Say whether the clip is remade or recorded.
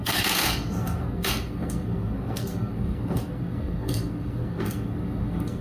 remade